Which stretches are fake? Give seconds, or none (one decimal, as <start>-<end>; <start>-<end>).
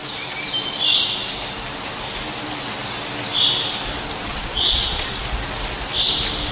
4.2-5.2